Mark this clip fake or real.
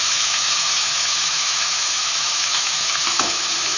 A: fake